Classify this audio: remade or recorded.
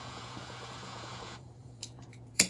remade